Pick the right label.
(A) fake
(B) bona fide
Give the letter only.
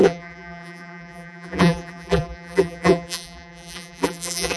A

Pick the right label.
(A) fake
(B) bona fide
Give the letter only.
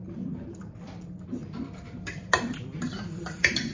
A